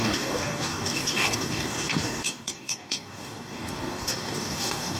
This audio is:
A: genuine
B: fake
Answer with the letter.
B